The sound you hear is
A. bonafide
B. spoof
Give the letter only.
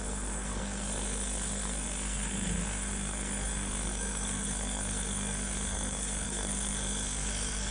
B